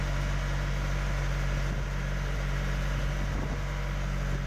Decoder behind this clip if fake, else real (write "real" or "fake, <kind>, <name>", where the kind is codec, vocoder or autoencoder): real